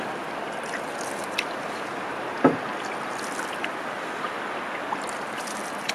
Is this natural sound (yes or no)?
yes